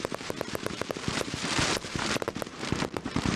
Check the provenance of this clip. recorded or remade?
remade